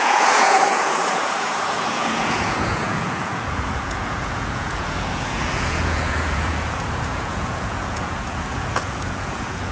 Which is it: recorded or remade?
remade